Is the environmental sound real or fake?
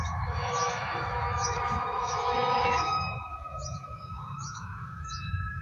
fake